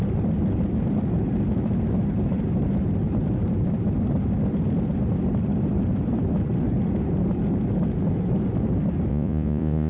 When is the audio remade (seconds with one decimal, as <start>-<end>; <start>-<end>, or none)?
9.1-9.9